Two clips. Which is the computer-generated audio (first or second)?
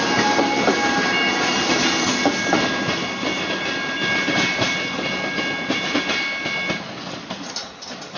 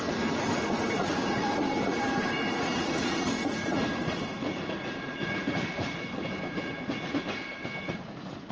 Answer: second